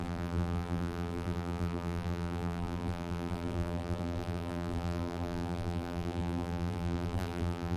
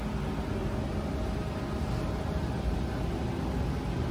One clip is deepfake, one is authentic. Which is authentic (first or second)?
second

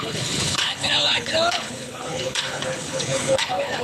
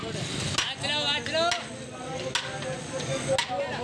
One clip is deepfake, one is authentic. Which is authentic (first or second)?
second